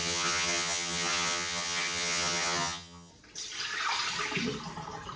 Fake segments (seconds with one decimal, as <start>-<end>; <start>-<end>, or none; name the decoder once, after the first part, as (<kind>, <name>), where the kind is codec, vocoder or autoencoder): 0.0-3.1 (vocoder, HiFi-GAN)